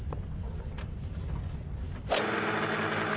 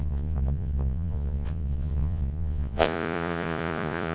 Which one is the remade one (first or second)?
second